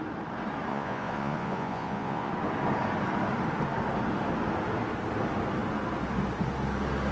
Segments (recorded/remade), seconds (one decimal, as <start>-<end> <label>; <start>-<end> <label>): 0.0-0.7 recorded; 0.7-2.3 remade; 2.3-7.1 recorded